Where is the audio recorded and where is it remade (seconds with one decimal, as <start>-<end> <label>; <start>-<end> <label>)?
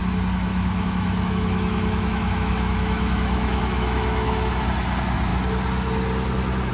0.0-0.5 recorded; 0.5-4.5 remade; 4.5-6.7 recorded